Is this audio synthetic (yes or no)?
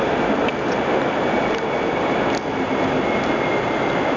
no